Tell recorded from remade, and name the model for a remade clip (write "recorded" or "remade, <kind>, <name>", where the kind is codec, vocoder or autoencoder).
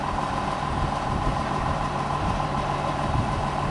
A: remade, vocoder, BigVGAN v2